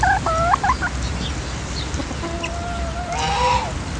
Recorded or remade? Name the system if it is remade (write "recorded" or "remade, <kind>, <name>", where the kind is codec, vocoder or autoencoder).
recorded